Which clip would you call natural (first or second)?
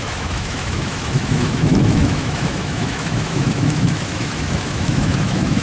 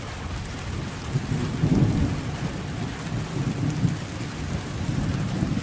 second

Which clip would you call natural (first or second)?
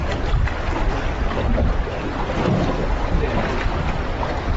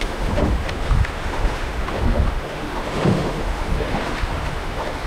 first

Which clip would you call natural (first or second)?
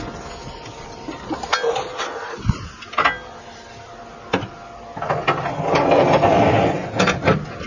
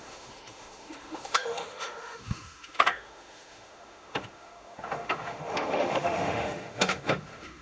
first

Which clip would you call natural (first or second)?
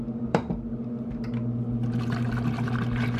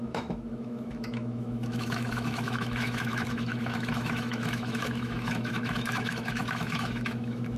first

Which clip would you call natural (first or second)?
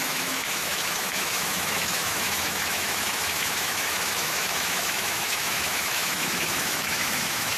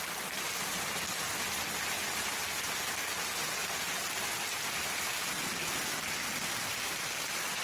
second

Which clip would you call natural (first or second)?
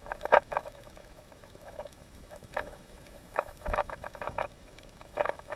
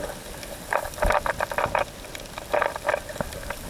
second